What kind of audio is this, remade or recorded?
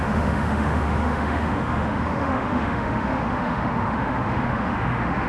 remade